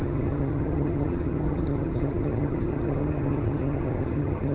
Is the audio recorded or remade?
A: remade